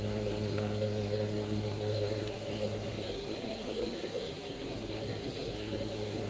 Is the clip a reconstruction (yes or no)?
yes